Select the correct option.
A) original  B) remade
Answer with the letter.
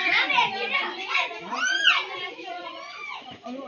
B